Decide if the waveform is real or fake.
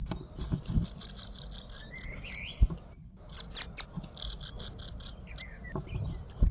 real